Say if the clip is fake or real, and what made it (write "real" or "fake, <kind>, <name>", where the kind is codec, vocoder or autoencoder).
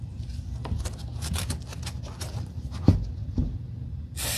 real